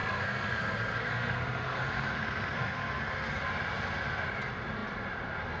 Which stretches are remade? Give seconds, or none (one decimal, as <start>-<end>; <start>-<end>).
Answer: 0.0-3.4